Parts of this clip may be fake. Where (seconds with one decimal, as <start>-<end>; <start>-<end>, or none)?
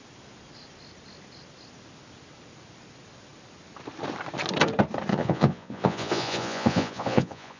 5.1-7.6